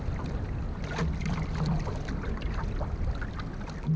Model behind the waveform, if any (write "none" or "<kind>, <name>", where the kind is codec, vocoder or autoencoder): none